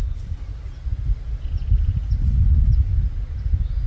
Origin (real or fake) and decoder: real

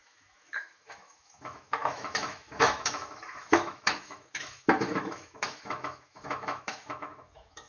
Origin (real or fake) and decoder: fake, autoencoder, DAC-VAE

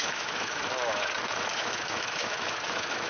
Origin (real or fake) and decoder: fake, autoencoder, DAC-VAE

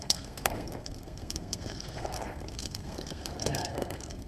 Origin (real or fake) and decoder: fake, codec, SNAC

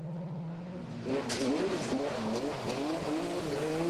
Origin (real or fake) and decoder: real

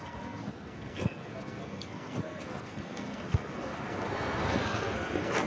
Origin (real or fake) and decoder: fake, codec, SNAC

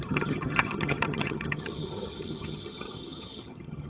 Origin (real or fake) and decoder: fake, vocoder, HiFi-GAN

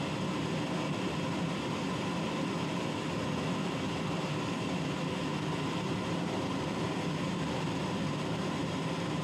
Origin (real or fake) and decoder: real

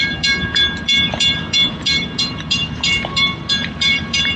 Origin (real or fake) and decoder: fake, vocoder, BigVGAN v2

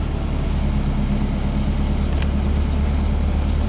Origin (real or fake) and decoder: real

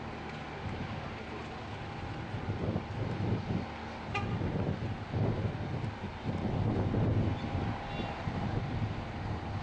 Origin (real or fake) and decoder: real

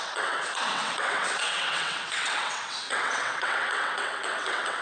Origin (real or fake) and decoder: fake, vocoder, WaveNeXt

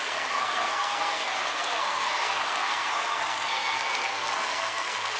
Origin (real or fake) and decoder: fake, codec, SNAC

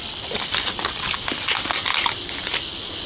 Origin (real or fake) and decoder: real